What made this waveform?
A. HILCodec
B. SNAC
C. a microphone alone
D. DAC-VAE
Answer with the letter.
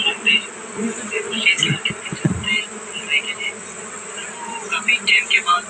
C